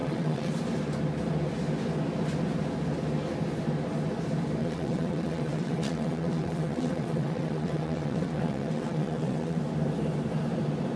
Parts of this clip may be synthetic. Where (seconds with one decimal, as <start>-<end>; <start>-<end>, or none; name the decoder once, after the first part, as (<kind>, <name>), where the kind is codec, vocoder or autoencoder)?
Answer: 0.0-0.5 (vocoder, WaveNeXt); 4.6-9.6